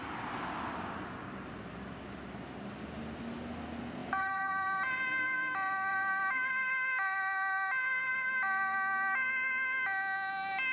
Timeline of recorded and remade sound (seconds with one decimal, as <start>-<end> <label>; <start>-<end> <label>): 0.0-4.0 recorded; 4.0-4.5 remade; 4.5-5.9 recorded; 5.9-6.5 remade; 6.5-10.7 recorded